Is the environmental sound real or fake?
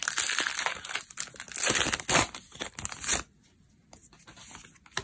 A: real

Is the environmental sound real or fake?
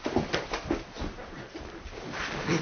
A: real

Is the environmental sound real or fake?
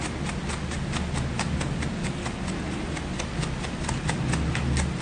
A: real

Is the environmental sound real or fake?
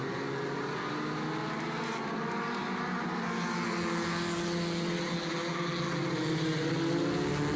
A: real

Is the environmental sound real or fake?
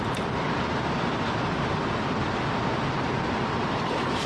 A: real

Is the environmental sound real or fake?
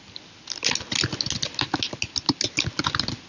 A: real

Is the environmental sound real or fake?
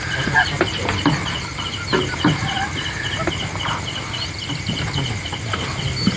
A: real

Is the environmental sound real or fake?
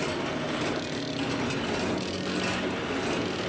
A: real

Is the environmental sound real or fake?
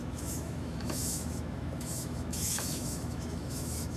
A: fake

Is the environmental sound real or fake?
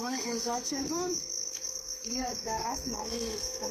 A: fake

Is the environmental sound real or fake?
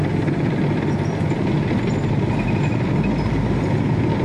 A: real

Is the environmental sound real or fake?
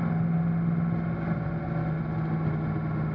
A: real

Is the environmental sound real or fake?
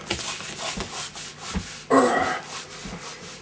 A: real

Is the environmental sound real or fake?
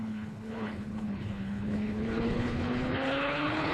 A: fake